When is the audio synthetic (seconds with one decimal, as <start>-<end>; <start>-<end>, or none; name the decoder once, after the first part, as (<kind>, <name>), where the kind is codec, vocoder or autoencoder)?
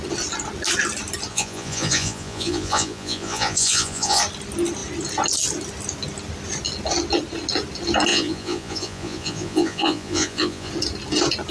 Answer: 1.3-4.2 (vocoder, Vocos); 8.1-10.7